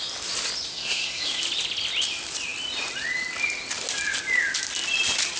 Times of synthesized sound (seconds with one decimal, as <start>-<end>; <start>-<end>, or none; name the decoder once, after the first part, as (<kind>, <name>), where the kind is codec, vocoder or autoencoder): 0.7-1.4 (codec, SNAC)